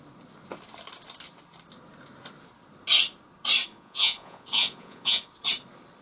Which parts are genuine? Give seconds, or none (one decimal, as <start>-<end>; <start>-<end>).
0.0-3.7; 5.3-6.0

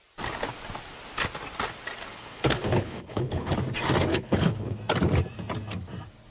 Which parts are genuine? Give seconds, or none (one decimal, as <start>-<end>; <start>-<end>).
0.0-2.1; 3.5-4.1; 4.8-6.3

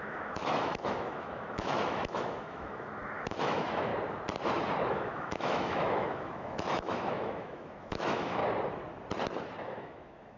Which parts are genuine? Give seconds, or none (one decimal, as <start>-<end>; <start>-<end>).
3.9-4.9; 8.4-9.6

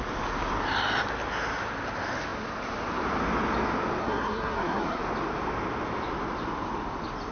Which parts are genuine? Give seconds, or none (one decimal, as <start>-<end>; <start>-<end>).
0.0-4.0; 5.0-7.3

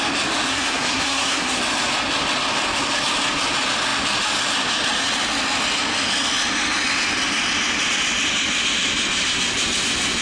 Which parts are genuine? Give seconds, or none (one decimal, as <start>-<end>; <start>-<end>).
0.0-0.5; 1.6-10.2

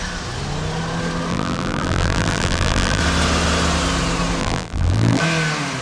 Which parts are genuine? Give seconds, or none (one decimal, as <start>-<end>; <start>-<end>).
0.0-1.3; 3.0-4.4; 5.2-5.8

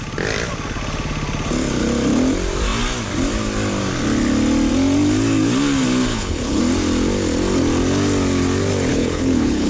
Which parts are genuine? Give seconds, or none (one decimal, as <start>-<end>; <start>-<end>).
0.0-6.1; 6.6-8.9